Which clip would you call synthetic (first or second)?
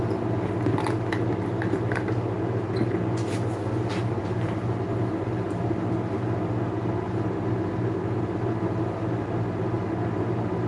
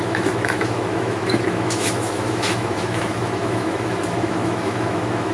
second